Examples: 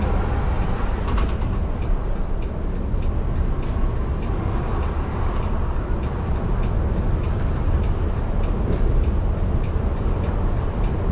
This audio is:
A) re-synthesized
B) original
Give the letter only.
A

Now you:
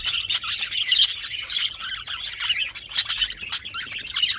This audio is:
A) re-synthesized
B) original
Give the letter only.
B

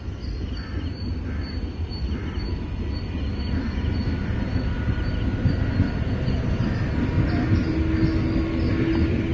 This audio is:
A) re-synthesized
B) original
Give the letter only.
B